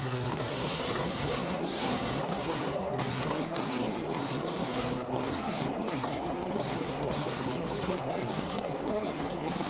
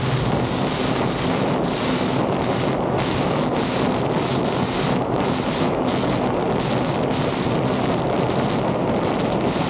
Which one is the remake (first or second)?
first